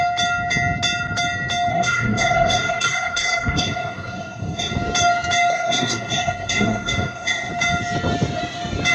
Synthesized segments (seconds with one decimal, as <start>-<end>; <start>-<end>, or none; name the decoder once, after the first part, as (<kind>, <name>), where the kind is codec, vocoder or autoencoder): 1.7-4.7 (codec, SNAC); 5.5-7.5